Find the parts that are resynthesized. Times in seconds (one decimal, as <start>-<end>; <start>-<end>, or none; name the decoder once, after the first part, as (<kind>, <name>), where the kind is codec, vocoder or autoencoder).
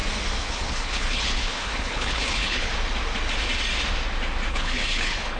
0.5-2.7 (codec, HILCodec); 4.5-5.4